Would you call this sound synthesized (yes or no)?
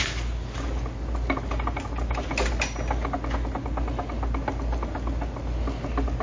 no